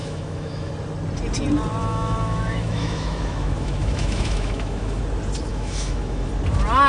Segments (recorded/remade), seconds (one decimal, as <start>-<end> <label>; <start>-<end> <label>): 0.0-0.7 remade; 0.7-1.8 recorded; 1.8-5.0 remade; 5.0-5.5 recorded; 5.5-6.3 remade; 6.3-6.9 recorded